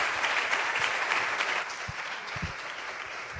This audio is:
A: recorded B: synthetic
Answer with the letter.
B